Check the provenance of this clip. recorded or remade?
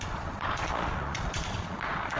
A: remade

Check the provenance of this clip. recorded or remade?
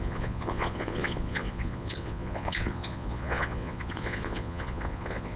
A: remade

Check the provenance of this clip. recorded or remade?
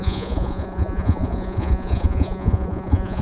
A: remade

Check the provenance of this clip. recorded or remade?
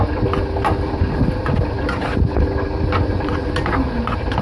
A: recorded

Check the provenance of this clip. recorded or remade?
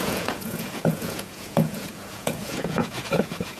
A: remade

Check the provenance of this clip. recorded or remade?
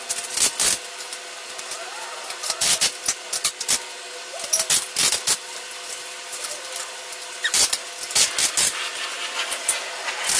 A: recorded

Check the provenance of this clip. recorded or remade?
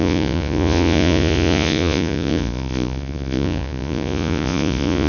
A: remade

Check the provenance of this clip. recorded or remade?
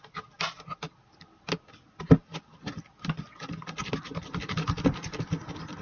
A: recorded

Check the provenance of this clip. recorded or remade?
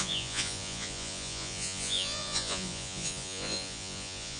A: remade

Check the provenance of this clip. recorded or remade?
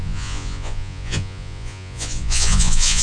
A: remade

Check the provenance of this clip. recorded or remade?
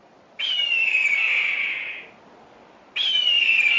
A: recorded